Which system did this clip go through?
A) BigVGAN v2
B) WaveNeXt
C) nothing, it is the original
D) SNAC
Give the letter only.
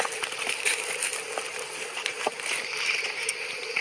C